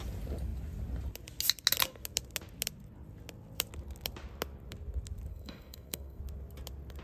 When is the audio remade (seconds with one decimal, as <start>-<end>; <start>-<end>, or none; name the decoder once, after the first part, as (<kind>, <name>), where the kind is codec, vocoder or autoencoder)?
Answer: 5.3-6.2 (codec, SNAC)